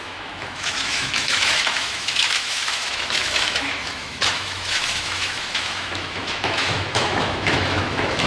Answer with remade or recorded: remade